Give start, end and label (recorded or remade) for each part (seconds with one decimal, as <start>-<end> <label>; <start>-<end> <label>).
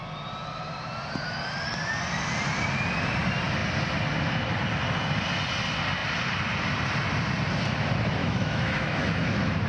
0.0-8.2 recorded; 8.2-9.7 remade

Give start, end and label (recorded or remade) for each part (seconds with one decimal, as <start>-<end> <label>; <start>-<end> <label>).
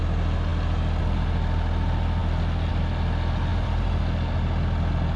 0.0-3.5 recorded; 3.5-4.0 remade; 4.0-5.2 recorded